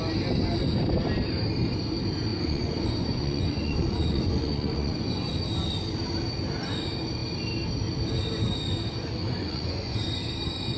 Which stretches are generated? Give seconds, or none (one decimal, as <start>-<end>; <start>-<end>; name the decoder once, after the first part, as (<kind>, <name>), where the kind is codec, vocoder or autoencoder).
2.3-5.3 (vocoder, Vocos); 9.2-10.0